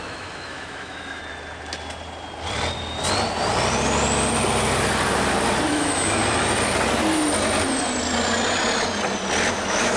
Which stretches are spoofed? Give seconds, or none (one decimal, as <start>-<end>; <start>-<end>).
0.0-1.2; 5.7-6.2; 9.5-10.0

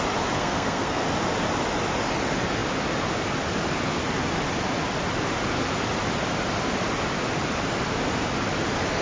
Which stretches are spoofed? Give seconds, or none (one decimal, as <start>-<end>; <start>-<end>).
0.4-1.0

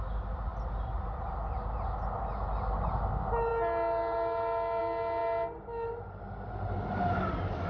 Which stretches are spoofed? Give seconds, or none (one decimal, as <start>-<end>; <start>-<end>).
none

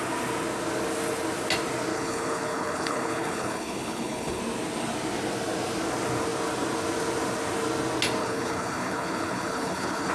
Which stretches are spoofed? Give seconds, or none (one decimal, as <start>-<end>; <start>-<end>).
1.9-4.4; 8.2-10.1

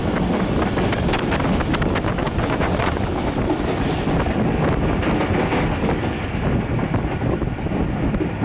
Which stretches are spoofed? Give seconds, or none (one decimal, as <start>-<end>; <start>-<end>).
2.2-3.0

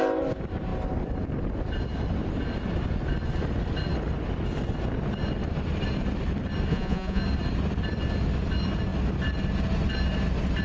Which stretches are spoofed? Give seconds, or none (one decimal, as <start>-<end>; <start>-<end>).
6.7-7.2

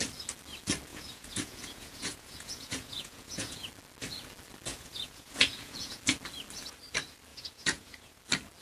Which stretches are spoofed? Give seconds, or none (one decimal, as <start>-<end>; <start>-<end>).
0.9-3.7; 4.7-6.0; 7.3-8.2